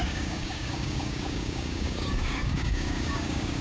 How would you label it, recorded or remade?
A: remade